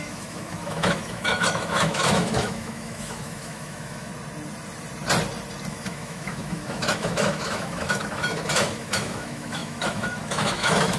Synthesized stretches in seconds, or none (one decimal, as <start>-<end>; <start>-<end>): 0.0-4.1; 5.7-11.0